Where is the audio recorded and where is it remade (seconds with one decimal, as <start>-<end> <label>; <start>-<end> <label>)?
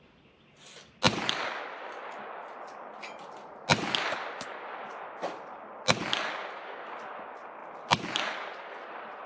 0.0-9.3 recorded